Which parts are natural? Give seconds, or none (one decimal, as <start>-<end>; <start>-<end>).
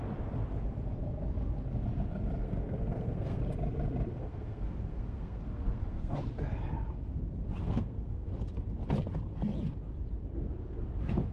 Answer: 0.0-2.4; 3.4-4.1; 6.2-7.6; 8.3-11.3